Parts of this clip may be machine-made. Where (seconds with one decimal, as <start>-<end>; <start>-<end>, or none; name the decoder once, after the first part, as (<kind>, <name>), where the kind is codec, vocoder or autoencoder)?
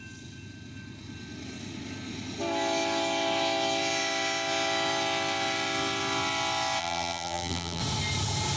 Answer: 6.8-7.8 (vocoder, BigVGAN v2)